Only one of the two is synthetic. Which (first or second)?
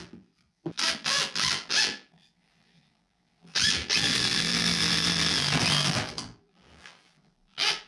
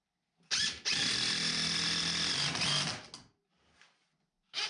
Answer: first